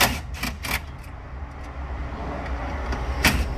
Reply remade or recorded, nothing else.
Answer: recorded